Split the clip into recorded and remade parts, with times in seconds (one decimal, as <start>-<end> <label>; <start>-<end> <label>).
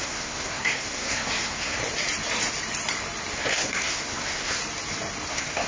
0.0-1.8 remade; 1.8-3.3 recorded; 3.3-4.6 remade; 4.6-5.3 recorded; 5.3-5.7 remade